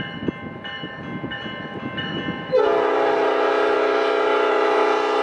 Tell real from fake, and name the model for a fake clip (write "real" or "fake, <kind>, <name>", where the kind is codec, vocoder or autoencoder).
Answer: real